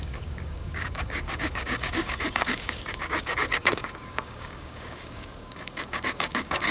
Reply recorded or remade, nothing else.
remade